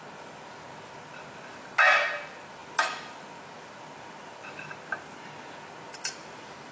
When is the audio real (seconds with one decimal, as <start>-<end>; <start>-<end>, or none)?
0.0-6.7